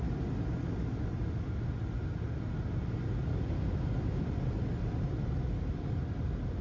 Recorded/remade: recorded